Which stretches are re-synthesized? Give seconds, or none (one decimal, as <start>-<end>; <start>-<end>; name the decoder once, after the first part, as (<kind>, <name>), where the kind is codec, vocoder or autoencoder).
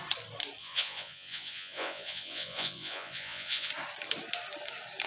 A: 0.6-3.7 (vocoder, Vocos)